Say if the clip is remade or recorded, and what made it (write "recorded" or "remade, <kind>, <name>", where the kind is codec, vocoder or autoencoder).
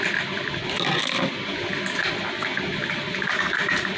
recorded